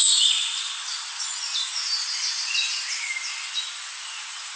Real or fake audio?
real